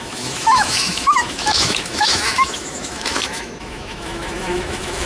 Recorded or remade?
remade